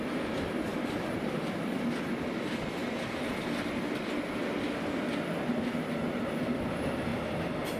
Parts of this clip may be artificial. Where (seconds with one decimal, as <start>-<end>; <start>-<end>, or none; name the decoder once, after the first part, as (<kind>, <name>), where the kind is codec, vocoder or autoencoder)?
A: 0.7-1.8 (vocoder, BigVGAN v2); 7.1-7.8